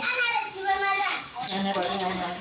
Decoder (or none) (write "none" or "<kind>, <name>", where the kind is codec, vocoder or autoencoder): codec, DAC